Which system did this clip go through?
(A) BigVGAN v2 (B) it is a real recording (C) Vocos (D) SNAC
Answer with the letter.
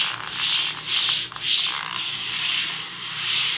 B